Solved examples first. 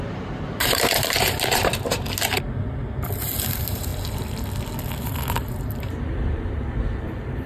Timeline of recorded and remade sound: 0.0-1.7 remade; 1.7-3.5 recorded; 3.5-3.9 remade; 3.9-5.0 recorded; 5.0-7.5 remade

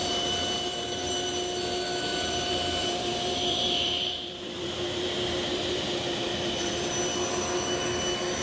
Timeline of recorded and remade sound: 0.0-1.1 remade; 1.1-2.1 recorded; 2.1-6.9 remade; 6.9-8.4 recorded

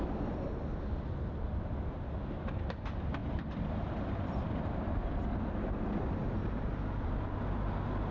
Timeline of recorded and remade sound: 0.0-3.2 recorded; 3.2-4.6 remade; 4.6-8.1 recorded

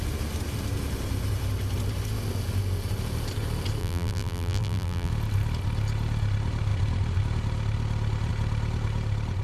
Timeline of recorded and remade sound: 0.0-3.8 recorded; 3.8-5.1 remade; 5.1-9.4 recorded